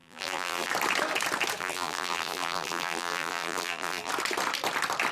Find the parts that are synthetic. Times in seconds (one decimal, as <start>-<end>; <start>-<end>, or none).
0.0-0.7; 1.6-4.1